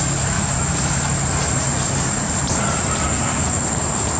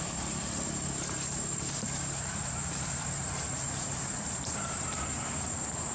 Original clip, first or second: first